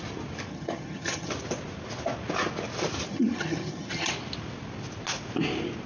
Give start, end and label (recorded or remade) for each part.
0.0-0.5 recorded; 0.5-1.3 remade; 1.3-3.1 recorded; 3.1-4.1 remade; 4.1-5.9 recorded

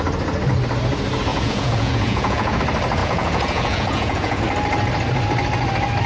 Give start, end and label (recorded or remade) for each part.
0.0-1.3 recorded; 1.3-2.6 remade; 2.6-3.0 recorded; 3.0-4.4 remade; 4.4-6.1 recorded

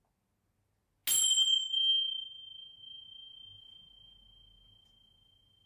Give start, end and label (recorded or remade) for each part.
0.0-5.7 recorded